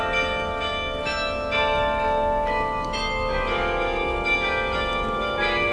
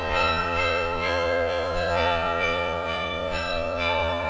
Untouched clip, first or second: first